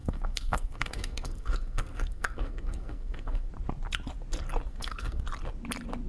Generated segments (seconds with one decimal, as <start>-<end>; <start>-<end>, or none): 0.0-3.5; 4.7-5.2